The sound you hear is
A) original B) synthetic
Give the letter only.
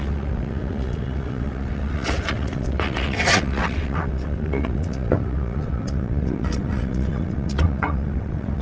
B